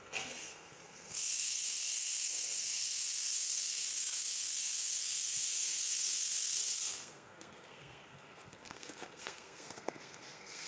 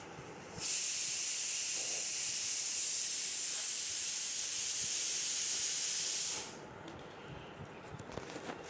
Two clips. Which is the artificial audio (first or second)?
first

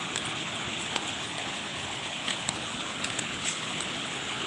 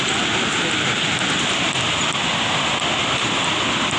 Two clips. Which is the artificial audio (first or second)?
first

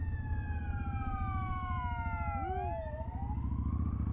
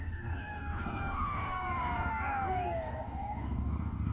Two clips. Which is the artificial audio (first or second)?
second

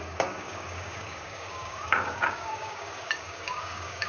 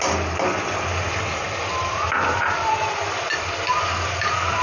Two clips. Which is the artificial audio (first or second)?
first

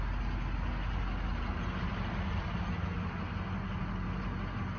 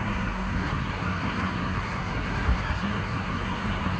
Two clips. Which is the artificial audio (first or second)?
second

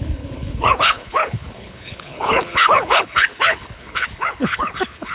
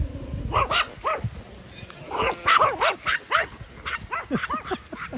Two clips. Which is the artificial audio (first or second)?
first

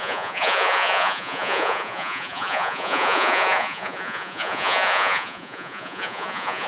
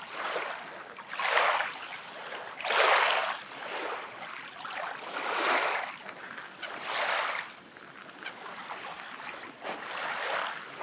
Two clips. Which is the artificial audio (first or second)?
first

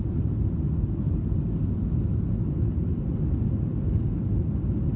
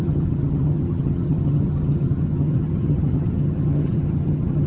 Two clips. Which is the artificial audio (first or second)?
second